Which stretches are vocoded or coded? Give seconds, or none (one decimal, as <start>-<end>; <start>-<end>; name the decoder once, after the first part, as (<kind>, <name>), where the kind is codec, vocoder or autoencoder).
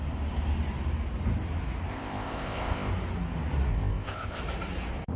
1.9-2.9 (codec, ZipCodec); 3.7-4.4